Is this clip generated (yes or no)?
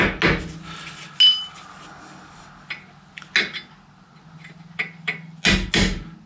no